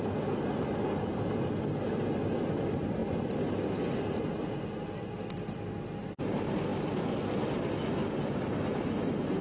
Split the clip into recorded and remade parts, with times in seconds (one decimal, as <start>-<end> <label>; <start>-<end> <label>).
0.0-9.4 recorded